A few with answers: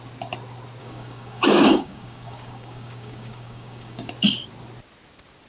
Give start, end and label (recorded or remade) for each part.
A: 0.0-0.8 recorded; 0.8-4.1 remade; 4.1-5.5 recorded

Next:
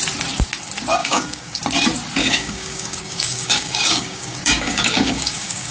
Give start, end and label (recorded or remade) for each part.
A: 0.0-1.0 recorded; 1.0-1.6 remade; 1.6-2.2 recorded; 2.2-5.7 remade

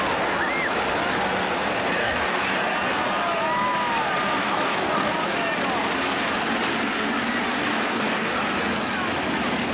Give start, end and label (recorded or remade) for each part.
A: 0.0-2.0 recorded; 2.0-2.6 remade; 2.6-4.4 recorded; 4.4-5.1 remade; 5.1-7.6 recorded; 7.6-8.3 remade; 8.3-9.7 recorded

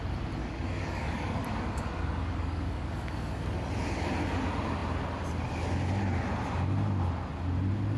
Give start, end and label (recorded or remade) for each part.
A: 0.0-0.4 recorded; 0.4-3.4 remade; 3.4-8.0 recorded

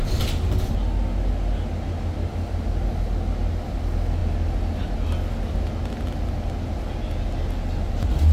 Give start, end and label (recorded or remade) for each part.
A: 0.0-8.3 recorded

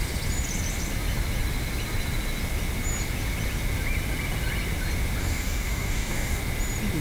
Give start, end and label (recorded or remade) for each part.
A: 0.0-5.2 recorded; 5.2-6.4 remade; 6.4-7.0 recorded

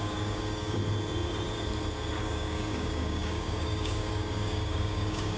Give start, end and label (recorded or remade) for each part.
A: 0.0-0.8 remade; 0.8-2.2 recorded; 2.2-5.4 remade